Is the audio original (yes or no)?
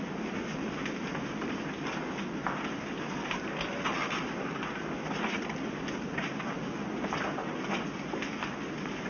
yes